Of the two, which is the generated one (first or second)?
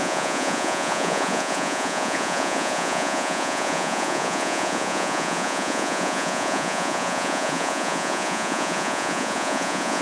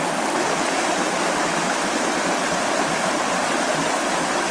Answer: first